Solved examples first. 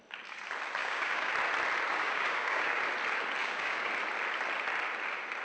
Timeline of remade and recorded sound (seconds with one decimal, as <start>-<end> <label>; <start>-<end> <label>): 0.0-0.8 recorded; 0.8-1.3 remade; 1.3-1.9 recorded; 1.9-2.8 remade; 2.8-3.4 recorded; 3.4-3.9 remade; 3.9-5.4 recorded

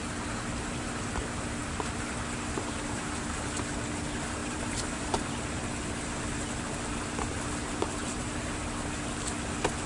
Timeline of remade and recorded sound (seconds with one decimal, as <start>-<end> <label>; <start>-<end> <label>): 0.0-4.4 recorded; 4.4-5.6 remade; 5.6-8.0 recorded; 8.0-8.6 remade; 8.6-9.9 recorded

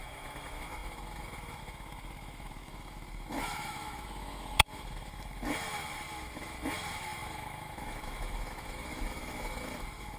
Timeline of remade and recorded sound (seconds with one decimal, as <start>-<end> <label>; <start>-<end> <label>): 0.0-10.2 remade